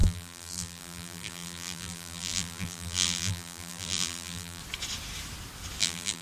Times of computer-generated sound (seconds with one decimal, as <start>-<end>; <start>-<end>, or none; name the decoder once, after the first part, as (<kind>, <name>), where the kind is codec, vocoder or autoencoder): 0.0-4.6 (vocoder, BigVGAN v2); 5.8-6.2